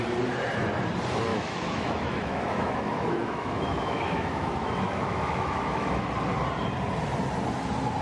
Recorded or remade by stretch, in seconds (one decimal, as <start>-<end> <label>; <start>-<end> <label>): 0.0-1.3 recorded; 1.3-6.1 remade; 6.1-8.0 recorded